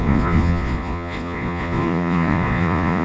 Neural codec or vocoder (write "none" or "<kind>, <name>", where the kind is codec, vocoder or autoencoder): vocoder, Vocos